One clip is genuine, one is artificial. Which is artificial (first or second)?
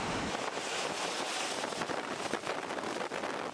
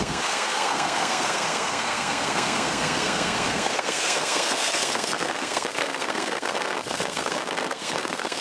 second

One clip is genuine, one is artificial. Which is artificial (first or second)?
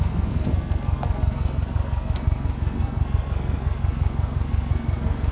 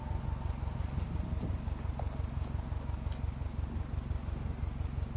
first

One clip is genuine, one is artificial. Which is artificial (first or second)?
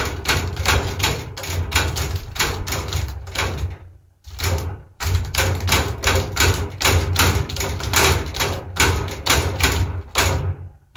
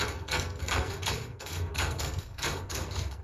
second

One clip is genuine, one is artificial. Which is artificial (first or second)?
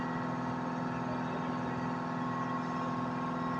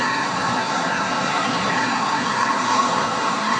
second